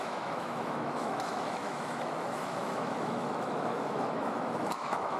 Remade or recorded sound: remade